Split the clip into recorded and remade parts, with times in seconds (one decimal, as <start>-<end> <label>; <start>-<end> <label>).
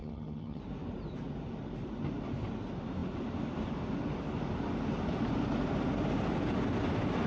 0.0-0.6 remade; 0.6-7.3 recorded